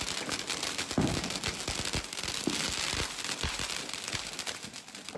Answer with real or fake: real